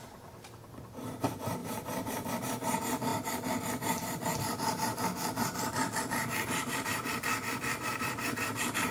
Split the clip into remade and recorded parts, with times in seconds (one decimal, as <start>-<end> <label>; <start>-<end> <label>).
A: 0.0-3.1 remade; 3.1-3.6 recorded; 3.6-4.9 remade; 4.9-6.0 recorded; 6.0-7.3 remade; 7.3-8.0 recorded; 8.0-8.9 remade